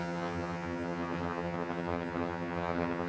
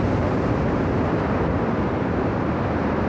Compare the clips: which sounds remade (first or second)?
first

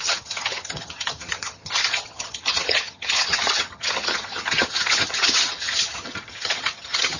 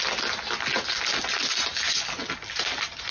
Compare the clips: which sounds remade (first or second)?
first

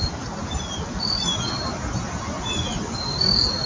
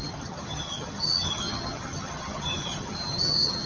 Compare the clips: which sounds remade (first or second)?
second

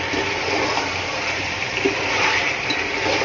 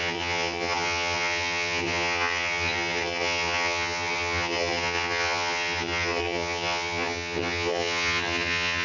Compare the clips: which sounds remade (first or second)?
second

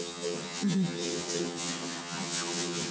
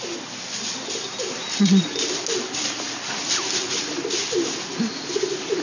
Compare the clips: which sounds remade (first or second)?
first